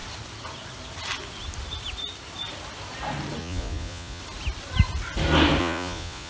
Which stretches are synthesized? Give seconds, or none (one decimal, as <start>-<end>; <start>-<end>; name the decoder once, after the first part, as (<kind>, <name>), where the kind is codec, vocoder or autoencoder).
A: 3.4-4.2 (vocoder, Vocos); 5.6-6.3